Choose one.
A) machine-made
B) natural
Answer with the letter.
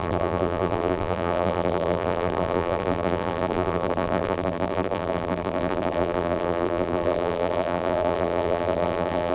A